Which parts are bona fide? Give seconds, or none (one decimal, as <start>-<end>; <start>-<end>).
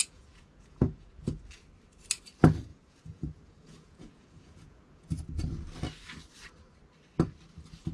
1.3-2.7; 5.1-7.9